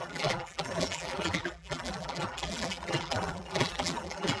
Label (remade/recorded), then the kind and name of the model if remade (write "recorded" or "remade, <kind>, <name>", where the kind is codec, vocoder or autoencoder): remade, vocoder, BigVGAN v2